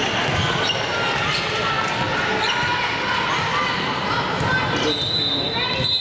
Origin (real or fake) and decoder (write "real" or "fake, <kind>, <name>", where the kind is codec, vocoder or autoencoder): real